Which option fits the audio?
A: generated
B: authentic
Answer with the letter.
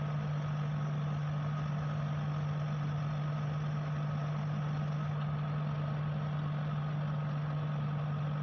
B